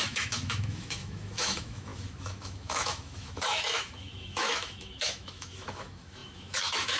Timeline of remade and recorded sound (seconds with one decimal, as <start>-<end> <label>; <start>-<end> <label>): 0.0-7.0 remade